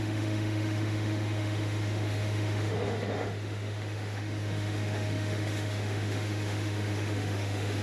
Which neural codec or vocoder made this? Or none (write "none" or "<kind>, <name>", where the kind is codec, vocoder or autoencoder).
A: autoencoder, DAC-VAE